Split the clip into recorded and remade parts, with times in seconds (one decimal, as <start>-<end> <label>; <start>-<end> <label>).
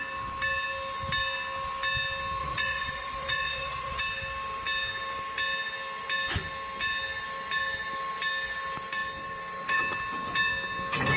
0.0-2.4 recorded; 2.4-4.0 remade; 4.0-11.2 recorded